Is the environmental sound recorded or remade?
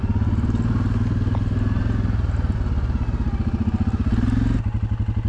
recorded